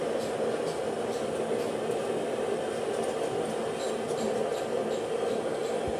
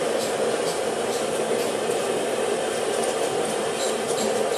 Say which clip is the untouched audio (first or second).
first